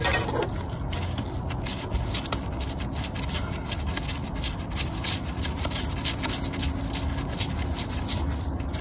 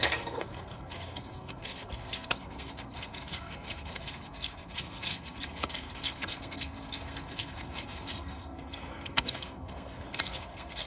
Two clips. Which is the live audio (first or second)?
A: first